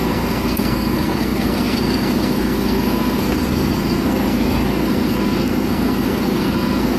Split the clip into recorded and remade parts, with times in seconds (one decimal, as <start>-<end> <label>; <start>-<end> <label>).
0.0-7.0 remade